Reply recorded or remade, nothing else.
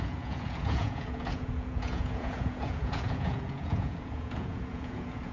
remade